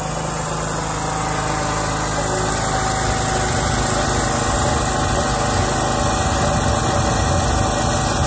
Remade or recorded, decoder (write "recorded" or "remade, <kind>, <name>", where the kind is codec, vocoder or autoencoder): recorded